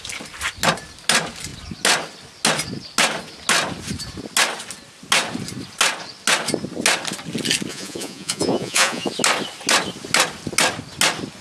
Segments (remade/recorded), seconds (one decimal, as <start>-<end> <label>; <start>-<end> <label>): 0.0-7.7 recorded; 7.7-9.1 remade; 9.1-11.4 recorded